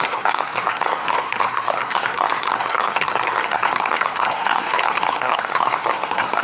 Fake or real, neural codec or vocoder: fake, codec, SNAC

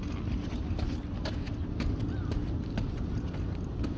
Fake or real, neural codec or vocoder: real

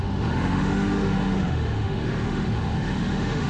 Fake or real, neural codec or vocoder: fake, autoencoder, DAC-VAE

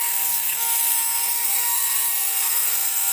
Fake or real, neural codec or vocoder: fake, codec, SNAC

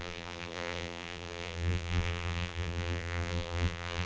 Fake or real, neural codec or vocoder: fake, vocoder, BigVGAN v2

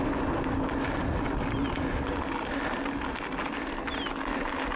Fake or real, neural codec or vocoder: real